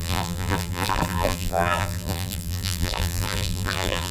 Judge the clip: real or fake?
fake